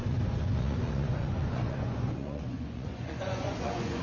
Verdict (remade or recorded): remade